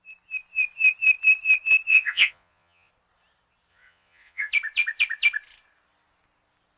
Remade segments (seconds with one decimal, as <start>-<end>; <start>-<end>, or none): 1.9-2.9; 3.7-4.5